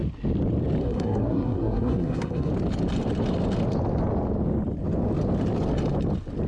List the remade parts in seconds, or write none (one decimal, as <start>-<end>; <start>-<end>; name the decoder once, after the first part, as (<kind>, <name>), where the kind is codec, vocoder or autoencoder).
0.8-2.5 (codec, SNAC)